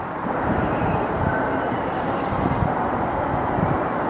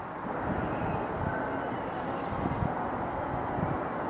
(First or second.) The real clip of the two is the second